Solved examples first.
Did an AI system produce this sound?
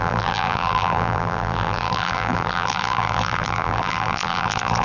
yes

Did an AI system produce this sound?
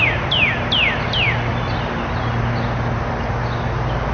no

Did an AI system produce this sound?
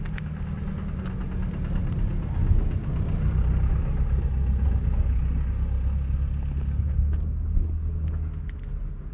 no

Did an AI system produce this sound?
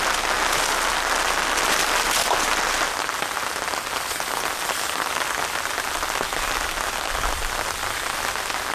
no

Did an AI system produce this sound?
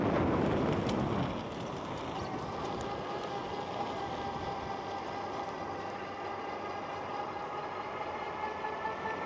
no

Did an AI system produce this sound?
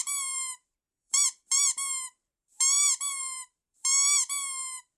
yes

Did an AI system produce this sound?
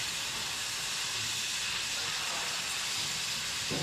no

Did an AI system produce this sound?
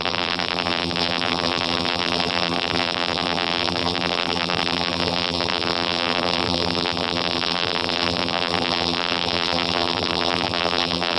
yes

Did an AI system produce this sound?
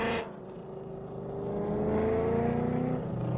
no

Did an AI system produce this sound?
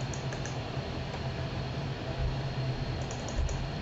yes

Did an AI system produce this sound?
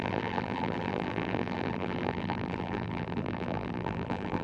yes